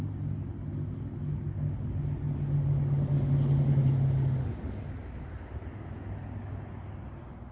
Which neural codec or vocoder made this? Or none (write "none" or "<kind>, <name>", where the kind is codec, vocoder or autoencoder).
none